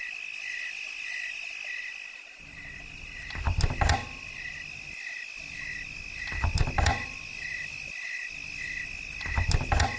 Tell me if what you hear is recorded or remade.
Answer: recorded